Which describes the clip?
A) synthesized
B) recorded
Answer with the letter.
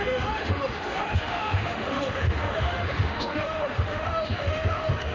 A